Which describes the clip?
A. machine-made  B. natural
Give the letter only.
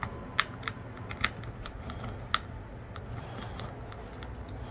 B